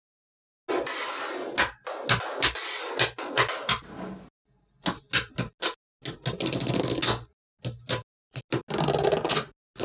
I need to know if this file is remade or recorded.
recorded